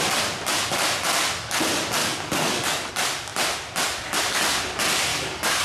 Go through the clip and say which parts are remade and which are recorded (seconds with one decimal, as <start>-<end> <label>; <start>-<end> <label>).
0.0-2.0 recorded; 2.0-2.9 remade; 2.9-5.1 recorded; 5.1-5.6 remade